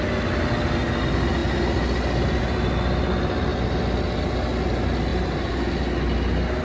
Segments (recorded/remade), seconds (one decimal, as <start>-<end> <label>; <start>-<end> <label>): 0.0-6.6 recorded